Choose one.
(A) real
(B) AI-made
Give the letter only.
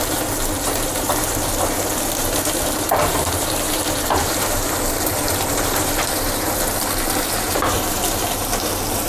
B